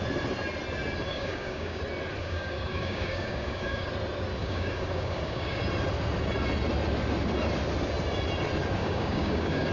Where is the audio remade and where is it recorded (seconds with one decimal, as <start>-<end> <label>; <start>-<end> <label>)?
0.0-1.1 recorded; 1.1-1.8 remade; 1.8-2.2 recorded; 2.2-3.9 remade; 3.9-4.4 recorded; 4.4-5.6 remade; 5.6-8.8 recorded; 8.8-9.7 remade